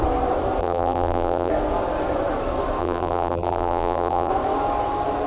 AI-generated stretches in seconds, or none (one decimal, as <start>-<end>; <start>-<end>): 0.6-1.5; 2.8-4.3